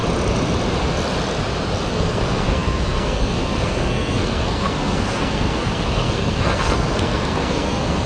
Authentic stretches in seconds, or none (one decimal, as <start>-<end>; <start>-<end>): 0.0-1.9